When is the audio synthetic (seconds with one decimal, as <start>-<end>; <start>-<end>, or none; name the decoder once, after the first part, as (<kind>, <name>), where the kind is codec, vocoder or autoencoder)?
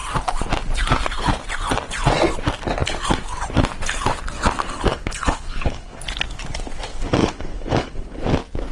4.9-6.0 (codec, HILCodec); 7.2-8.2